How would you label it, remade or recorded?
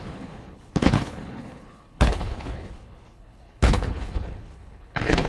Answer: remade